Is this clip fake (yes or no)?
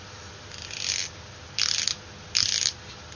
no